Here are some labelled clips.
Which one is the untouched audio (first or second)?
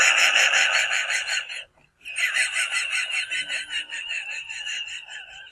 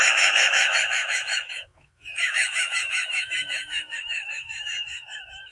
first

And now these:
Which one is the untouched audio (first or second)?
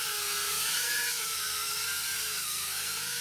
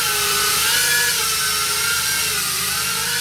second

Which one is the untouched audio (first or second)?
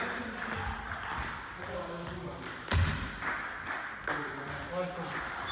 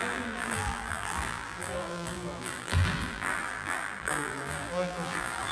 first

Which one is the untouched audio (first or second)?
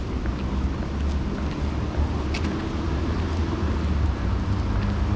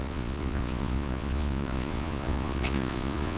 first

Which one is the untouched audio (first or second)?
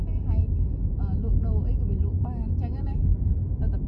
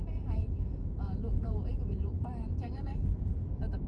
first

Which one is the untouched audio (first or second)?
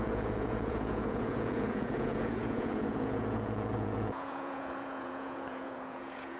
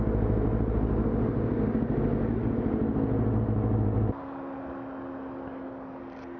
second